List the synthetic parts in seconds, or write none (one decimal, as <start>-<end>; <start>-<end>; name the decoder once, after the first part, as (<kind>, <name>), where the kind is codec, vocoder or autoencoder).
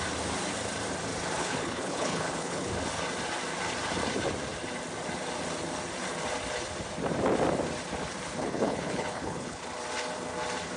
1.4-2.7 (codec, HILCodec); 8.4-9.6